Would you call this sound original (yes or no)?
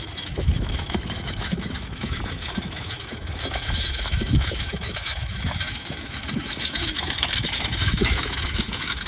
no